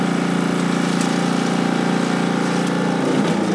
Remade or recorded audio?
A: recorded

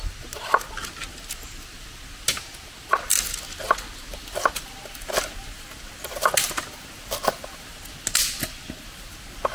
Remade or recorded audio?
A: recorded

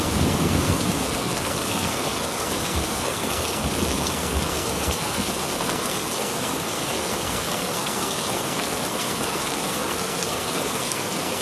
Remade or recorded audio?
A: remade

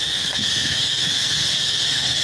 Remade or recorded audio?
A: remade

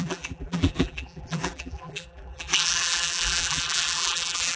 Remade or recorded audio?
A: remade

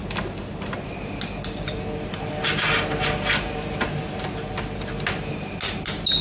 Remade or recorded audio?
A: recorded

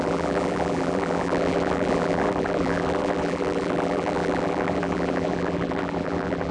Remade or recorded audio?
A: remade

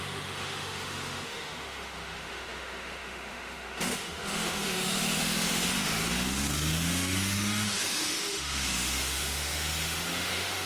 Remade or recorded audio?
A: remade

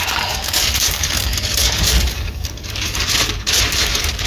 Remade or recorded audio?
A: remade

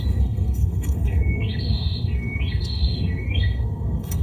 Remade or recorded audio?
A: remade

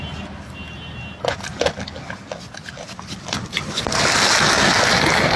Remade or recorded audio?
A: recorded